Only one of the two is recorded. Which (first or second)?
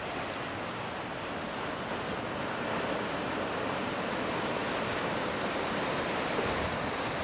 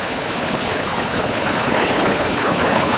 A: first